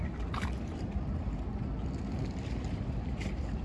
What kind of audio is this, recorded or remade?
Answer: recorded